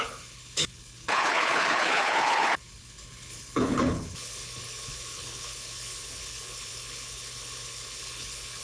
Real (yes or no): no